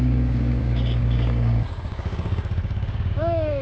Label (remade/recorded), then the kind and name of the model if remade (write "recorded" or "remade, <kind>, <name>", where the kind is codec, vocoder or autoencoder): remade, codec, DAC